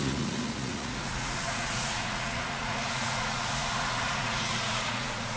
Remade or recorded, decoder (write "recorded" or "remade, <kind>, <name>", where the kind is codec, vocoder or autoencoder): remade, vocoder, Vocos